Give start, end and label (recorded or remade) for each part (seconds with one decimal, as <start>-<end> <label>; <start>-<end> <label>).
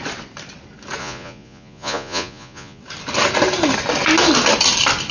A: 0.0-1.0 recorded; 1.0-2.8 remade; 2.8-5.1 recorded